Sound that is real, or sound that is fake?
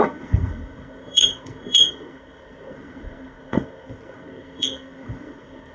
fake